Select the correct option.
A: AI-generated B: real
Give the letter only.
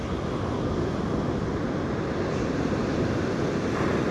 B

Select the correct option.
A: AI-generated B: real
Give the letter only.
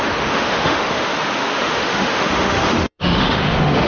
A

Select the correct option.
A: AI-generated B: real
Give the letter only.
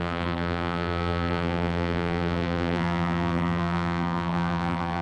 A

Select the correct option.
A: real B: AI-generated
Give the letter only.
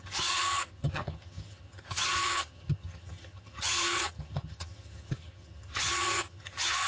B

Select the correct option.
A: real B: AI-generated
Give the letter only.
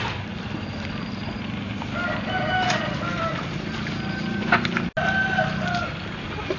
A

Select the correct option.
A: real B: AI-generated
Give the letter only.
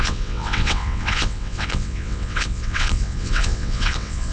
B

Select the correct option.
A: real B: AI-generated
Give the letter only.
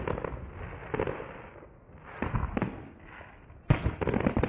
A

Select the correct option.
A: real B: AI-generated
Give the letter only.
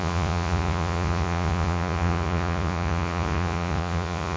B